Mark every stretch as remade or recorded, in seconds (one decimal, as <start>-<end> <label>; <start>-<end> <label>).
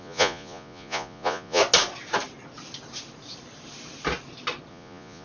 0.0-1.6 remade; 1.6-4.7 recorded; 4.7-5.2 remade